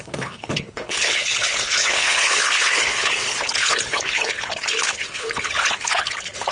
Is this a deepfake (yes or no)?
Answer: yes